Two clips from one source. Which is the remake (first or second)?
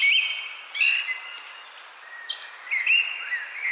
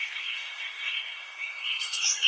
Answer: second